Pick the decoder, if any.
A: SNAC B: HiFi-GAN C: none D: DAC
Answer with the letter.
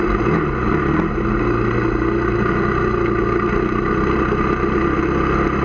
C